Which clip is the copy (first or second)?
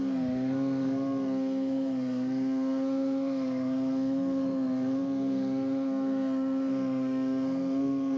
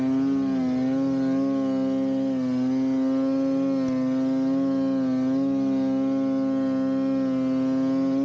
first